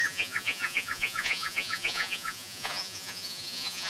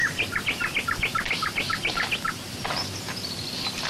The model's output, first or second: first